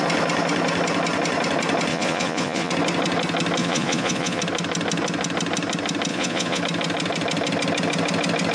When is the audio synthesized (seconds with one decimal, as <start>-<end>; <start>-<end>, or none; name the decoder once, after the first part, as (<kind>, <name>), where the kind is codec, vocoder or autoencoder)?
1.9-2.7 (vocoder, Vocos); 3.6-4.4; 6.1-6.6